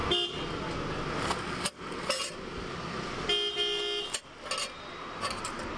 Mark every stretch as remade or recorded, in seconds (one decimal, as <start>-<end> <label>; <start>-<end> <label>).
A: 0.0-5.8 recorded